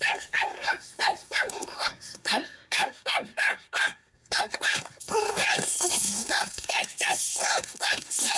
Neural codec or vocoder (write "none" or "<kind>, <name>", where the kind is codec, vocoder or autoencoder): codec, SNAC